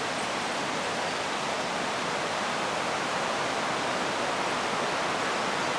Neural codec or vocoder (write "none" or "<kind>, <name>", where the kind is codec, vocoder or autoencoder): none